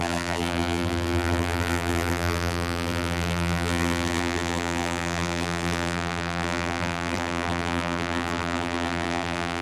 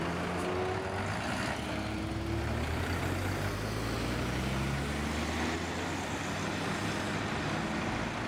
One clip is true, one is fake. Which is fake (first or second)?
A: first